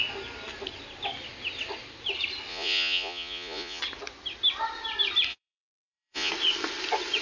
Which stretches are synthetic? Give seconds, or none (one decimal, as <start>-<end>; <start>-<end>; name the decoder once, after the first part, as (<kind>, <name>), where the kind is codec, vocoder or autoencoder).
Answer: 2.5-3.8 (vocoder, Vocos); 5.3-6.3